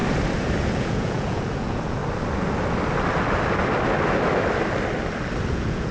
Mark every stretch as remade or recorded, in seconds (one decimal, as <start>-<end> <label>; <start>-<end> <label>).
0.0-0.7 recorded; 0.7-2.0 remade; 2.0-5.5 recorded; 5.5-5.9 remade